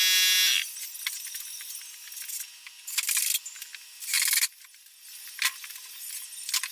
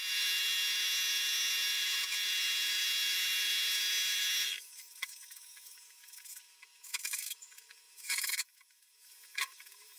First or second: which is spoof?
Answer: second